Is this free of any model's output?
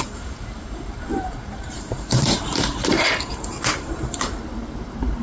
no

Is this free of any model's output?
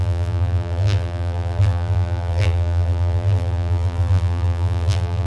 no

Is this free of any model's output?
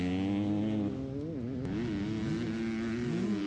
yes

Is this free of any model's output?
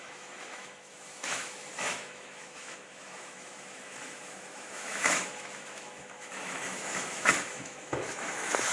no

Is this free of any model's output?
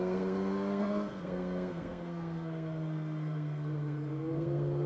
no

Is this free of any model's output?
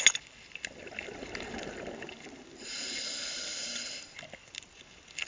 yes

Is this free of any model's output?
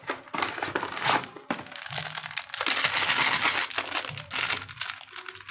yes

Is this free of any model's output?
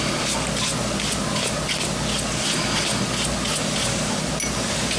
yes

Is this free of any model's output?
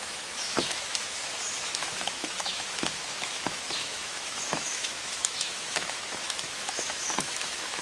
no